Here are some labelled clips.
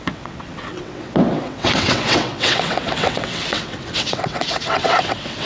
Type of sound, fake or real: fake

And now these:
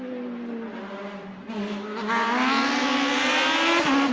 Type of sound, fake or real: real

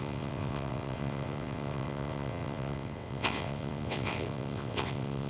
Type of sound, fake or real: fake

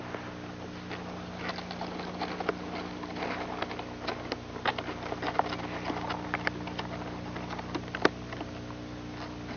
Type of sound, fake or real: real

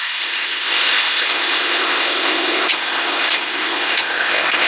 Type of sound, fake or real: fake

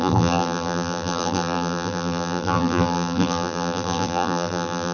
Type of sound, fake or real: fake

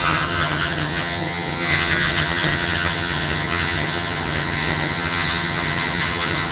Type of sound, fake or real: fake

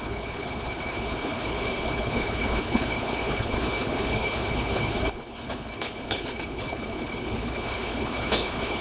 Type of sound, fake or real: fake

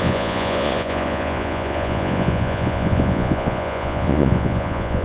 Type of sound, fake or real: fake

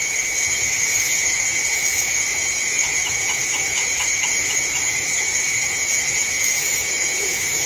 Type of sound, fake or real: fake